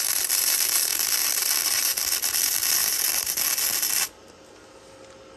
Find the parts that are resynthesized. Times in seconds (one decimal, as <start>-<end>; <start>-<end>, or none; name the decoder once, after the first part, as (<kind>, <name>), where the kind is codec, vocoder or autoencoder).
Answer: none